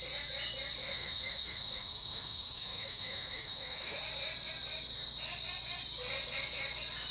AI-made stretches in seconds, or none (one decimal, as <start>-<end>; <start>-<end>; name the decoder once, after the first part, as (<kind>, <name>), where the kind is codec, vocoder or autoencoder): 0.8-4.0 (autoencoder, DAC-VAE)